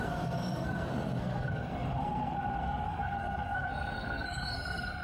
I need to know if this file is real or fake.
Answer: fake